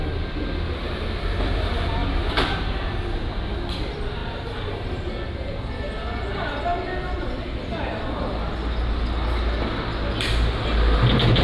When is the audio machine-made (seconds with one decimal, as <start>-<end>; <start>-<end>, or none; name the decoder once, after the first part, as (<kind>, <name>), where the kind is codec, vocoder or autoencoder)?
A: 2.0-2.7 (vocoder, BigVGAN v2); 4.2-5.1